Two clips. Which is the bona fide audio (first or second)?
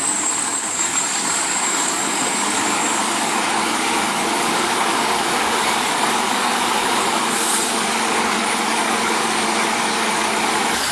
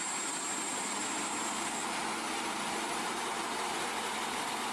second